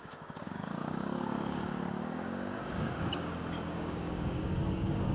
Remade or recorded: remade